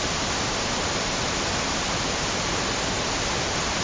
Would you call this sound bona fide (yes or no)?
yes